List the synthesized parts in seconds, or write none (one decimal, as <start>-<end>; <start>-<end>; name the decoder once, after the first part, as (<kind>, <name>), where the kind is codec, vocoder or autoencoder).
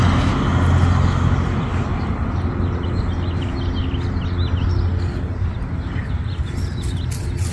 1.7-2.4 (vocoder, BigVGAN v2)